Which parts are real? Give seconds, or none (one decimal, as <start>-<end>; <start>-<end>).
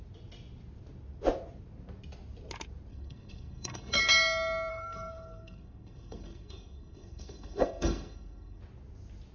0.0-2.9; 4.0-4.7; 8.6-9.3